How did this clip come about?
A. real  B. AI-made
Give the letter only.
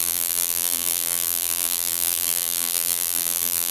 B